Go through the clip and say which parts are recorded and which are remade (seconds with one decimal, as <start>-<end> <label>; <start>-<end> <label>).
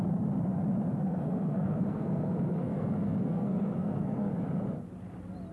0.0-1.0 recorded; 1.0-4.3 remade; 4.3-5.5 recorded